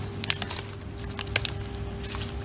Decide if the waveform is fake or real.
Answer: real